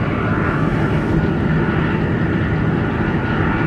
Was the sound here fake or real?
real